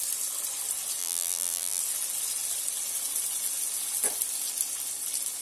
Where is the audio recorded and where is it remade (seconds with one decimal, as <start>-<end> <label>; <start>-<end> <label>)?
0.0-1.0 recorded; 1.0-1.8 remade; 1.8-5.4 recorded